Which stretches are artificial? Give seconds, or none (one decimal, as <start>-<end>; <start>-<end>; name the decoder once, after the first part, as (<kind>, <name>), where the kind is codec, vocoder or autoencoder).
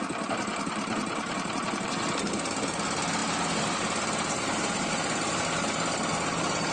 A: 0.5-2.5 (vocoder, BigVGAN v2); 3.2-6.7